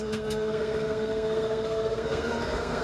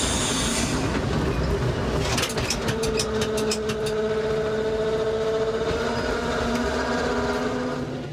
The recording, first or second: second